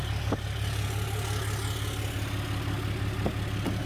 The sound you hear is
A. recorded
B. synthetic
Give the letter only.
A